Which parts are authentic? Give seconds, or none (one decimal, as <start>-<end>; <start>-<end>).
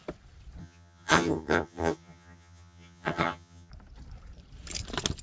0.0-0.6; 3.7-5.2